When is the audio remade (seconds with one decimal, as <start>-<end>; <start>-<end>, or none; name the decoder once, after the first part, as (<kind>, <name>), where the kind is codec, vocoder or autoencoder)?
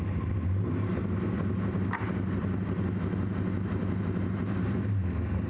1.3-2.4 (vocoder, BigVGAN v2)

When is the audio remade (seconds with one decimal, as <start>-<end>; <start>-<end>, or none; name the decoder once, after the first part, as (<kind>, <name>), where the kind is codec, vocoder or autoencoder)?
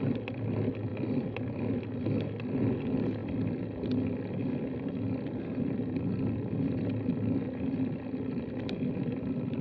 none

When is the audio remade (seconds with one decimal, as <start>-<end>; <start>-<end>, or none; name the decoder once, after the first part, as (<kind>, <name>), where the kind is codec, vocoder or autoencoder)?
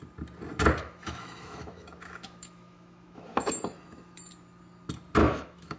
0.8-4.3 (autoencoder, DAC-VAE); 5.2-5.8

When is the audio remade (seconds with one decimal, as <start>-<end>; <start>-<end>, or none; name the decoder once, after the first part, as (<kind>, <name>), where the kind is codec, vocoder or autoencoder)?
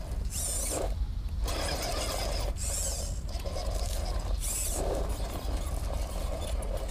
none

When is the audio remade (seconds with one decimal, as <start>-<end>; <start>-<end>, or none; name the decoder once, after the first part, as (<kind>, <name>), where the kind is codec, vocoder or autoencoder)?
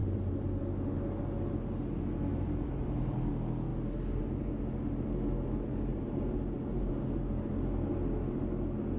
0.0-0.6 (vocoder, BigVGAN v2); 2.3-3.3; 5.9-6.9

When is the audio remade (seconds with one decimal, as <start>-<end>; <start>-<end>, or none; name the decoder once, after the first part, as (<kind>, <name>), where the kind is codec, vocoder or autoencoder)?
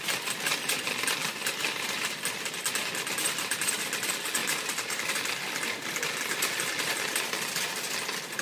4.4-5.1 (vocoder, BigVGAN v2)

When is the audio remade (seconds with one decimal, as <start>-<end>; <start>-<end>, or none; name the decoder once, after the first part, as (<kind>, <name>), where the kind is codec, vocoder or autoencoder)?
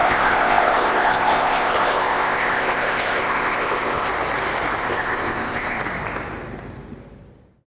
0.0-4.1 (codec, ZipCodec); 4.8-5.8